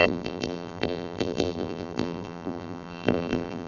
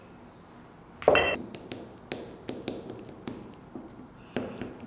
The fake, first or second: first